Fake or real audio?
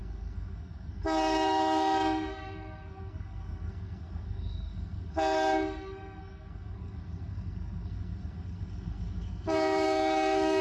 fake